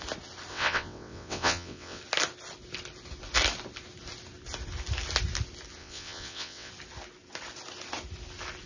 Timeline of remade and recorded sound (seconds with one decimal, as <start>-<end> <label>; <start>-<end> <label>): 0.0-0.5 recorded; 0.5-2.0 remade; 2.0-5.8 recorded; 5.8-6.7 remade; 6.7-8.7 recorded